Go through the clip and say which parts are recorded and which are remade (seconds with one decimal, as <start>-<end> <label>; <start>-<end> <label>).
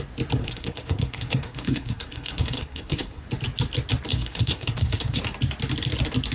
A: 0.0-0.4 recorded; 0.4-3.2 remade; 3.2-4.1 recorded; 4.1-5.2 remade; 5.2-6.3 recorded